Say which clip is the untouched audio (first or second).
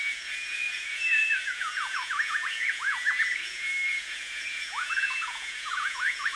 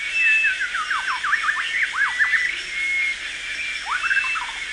second